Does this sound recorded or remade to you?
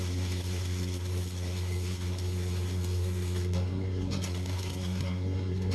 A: remade